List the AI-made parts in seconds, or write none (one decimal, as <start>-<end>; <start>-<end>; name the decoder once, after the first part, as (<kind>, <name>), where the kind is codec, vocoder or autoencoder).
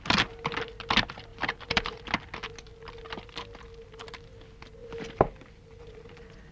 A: 1.3-2.0 (vocoder, BigVGAN v2); 4.8-5.4